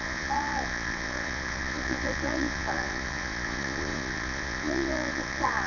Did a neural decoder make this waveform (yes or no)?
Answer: yes